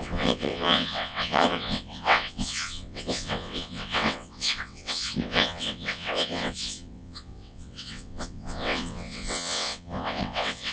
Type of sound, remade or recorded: remade